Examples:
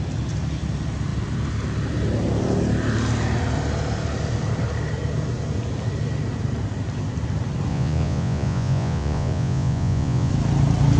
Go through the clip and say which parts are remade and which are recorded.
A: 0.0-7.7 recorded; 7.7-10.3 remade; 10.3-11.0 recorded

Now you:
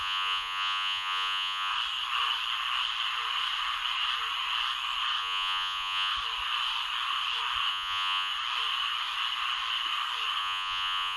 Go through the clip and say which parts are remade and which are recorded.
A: 0.0-1.7 remade; 1.7-5.2 recorded; 5.2-6.1 remade; 6.1-7.7 recorded; 7.7-8.3 remade; 8.3-10.4 recorded; 10.4-11.2 remade

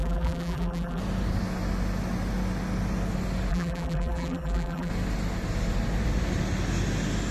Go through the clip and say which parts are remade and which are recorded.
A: 0.0-1.0 remade; 1.0-3.5 recorded; 3.5-4.9 remade; 4.9-7.3 recorded

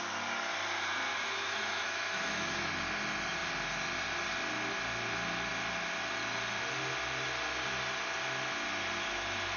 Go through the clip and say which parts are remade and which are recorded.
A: 0.0-1.1 recorded; 1.1-2.7 remade; 2.7-9.6 recorded

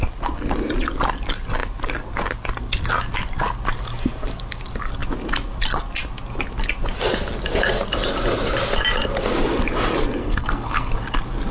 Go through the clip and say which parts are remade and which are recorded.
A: 0.0-10.2 recorded; 10.2-10.9 remade; 10.9-11.5 recorded

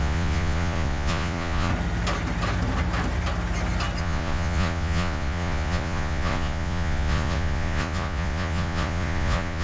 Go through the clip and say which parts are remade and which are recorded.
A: 0.0-1.7 remade; 1.7-4.0 recorded; 4.0-9.6 remade

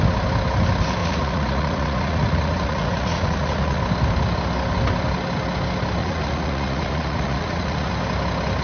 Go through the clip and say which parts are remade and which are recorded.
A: 0.0-1.0 recorded; 1.0-3.8 remade; 3.8-6.0 recorded; 6.0-7.9 remade; 7.9-8.6 recorded

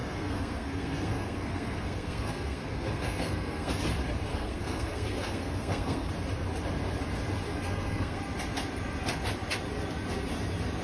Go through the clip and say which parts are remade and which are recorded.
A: 0.0-3.7 remade; 3.7-4.3 recorded; 4.3-6.1 remade; 6.1-7.5 recorded; 7.5-8.2 remade; 8.2-10.8 recorded